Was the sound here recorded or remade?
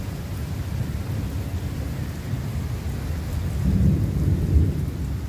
recorded